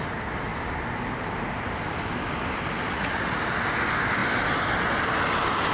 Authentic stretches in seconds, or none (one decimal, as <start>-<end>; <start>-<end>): 0.0-2.9; 3.4-5.7